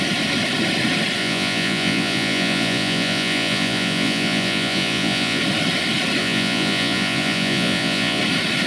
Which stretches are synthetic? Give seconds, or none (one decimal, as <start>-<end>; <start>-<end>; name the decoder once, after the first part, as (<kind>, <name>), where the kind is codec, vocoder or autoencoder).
1.2-5.4 (vocoder, Vocos); 6.2-8.2